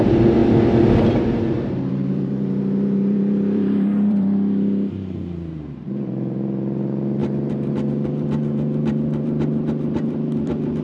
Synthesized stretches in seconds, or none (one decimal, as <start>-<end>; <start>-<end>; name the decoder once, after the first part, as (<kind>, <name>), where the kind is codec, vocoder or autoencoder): 0.0-0.4 (vocoder, BigVGAN v2); 1.1-10.8